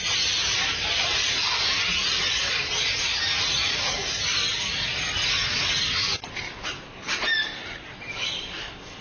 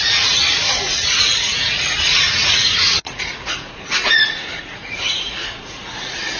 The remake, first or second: second